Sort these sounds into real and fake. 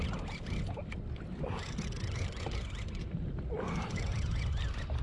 real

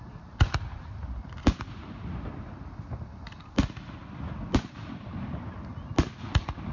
real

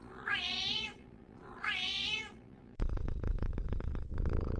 fake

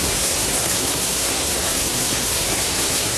fake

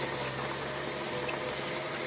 real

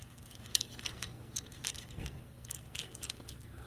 fake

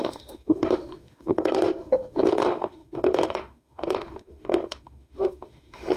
fake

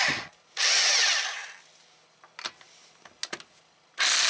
real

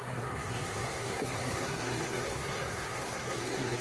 fake